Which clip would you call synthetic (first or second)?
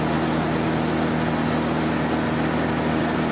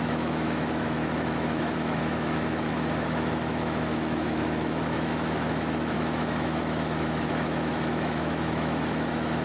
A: second